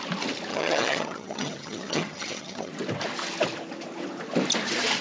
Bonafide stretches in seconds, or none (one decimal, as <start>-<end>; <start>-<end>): 0.0-0.5; 2.7-5.0